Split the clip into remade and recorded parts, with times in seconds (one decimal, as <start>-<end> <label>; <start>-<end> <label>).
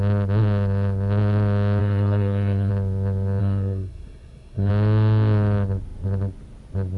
0.0-1.8 recorded; 1.8-2.7 remade; 2.7-3.4 recorded; 3.4-4.7 remade; 4.7-7.0 recorded